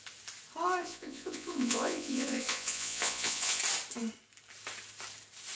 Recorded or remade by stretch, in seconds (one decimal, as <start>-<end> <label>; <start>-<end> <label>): 0.0-0.8 recorded; 0.8-3.6 remade; 3.6-5.5 recorded